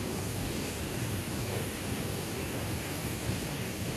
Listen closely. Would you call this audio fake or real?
fake